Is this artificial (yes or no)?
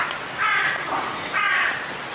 no